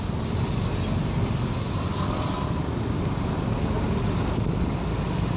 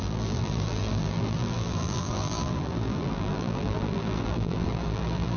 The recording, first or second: first